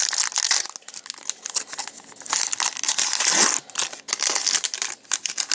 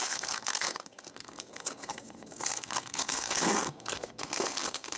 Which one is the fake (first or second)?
second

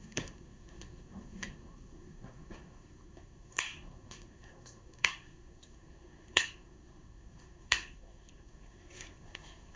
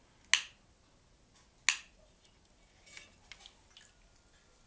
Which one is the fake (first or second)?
first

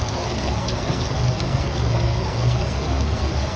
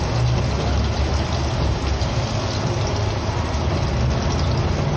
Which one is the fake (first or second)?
first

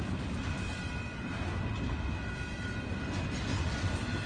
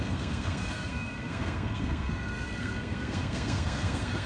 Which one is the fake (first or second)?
second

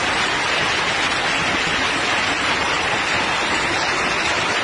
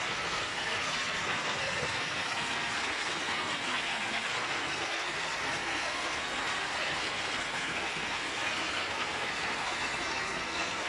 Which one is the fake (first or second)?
second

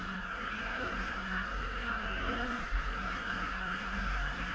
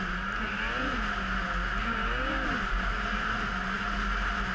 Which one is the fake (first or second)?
first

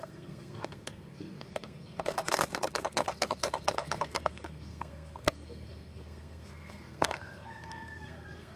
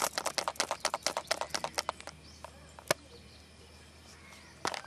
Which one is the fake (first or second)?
first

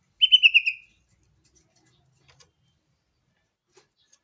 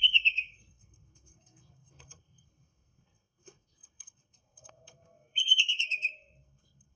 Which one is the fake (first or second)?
second